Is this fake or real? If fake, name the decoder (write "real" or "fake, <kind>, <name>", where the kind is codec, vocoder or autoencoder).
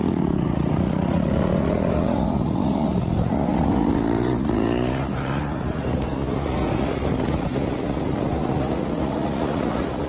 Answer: fake, vocoder, Vocos